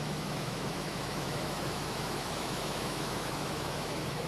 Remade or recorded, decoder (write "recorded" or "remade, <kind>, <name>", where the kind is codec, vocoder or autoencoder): remade, autoencoder, DAC-VAE